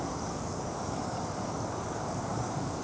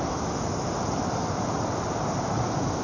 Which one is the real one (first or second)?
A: second